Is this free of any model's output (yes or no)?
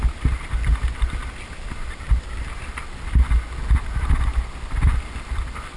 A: yes